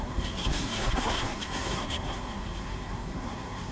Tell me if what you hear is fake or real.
fake